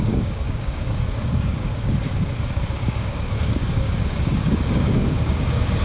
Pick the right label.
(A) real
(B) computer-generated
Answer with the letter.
B